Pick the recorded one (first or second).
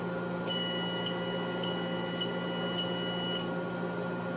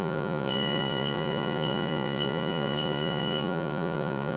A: first